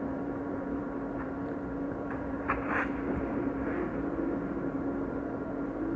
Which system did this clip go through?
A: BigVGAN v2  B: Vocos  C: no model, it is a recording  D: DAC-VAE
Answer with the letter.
A